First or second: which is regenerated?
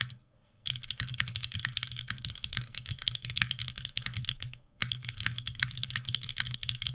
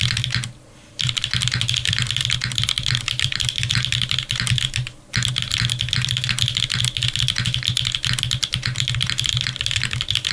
first